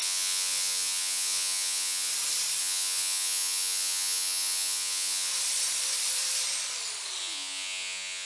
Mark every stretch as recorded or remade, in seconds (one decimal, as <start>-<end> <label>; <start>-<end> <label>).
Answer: 0.0-2.1 remade; 2.1-2.6 recorded; 2.6-5.3 remade; 5.3-7.2 recorded; 7.2-8.2 remade